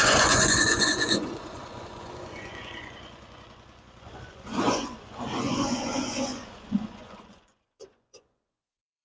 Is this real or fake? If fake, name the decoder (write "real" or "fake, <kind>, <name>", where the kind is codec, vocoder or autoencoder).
fake, vocoder, Vocos